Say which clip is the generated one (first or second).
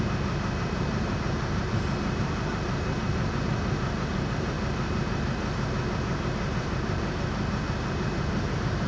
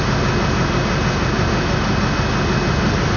first